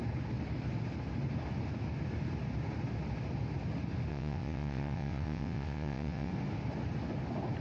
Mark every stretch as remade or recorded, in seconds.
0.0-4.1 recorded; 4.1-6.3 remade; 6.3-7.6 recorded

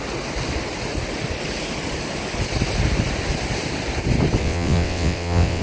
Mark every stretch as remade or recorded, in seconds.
0.0-4.4 recorded; 4.4-5.6 remade

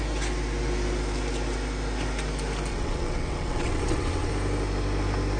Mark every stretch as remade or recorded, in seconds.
0.0-2.7 recorded; 2.7-4.3 remade; 4.3-5.4 recorded